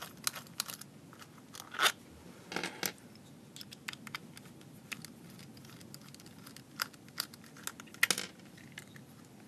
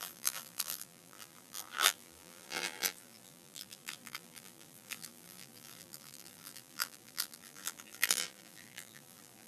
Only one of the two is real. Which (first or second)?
first